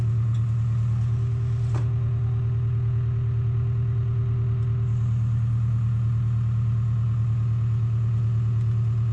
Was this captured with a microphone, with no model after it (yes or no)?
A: yes